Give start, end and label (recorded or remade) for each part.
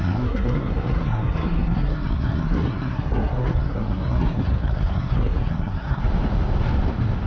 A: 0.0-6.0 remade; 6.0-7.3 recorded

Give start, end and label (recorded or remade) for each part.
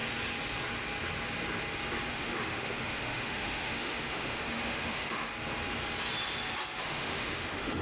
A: 0.0-2.1 recorded; 2.1-5.3 remade; 5.3-6.8 recorded; 6.8-7.8 remade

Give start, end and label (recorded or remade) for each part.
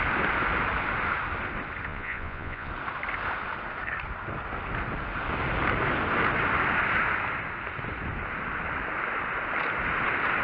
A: 0.0-1.9 recorded; 1.9-2.7 remade; 2.7-10.4 recorded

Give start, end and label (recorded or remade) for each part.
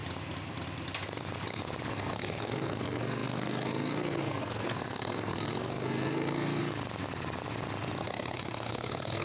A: 0.0-1.9 recorded; 1.9-6.6 remade; 6.6-8.0 recorded; 8.0-9.2 remade